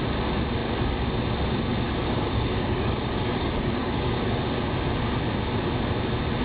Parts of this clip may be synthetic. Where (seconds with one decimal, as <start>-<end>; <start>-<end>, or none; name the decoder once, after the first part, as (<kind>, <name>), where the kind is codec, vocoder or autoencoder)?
1.7-4.4 (codec, DAC)